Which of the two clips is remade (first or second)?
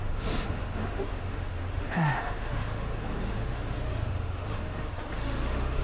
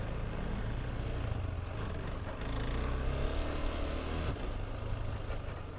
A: first